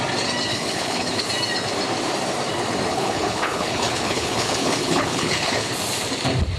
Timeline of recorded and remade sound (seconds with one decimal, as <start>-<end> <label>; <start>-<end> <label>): 0.0-0.5 recorded; 0.5-1.3 remade; 1.3-2.9 recorded; 2.9-5.7 remade; 5.7-6.6 recorded